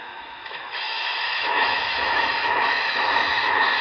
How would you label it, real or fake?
fake